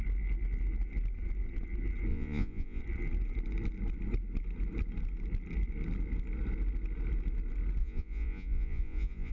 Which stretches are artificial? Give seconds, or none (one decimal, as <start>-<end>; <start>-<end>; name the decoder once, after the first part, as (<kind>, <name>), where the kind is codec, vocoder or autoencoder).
2.1-2.8 (vocoder, Vocos); 7.8-9.3